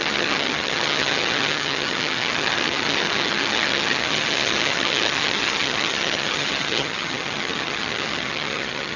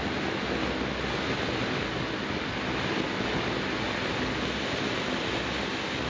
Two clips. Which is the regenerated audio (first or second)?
first